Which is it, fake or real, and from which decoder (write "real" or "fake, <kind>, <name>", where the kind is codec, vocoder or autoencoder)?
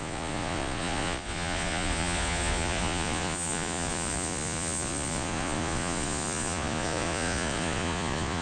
fake, vocoder, Vocos